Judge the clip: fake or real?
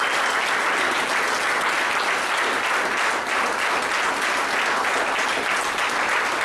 real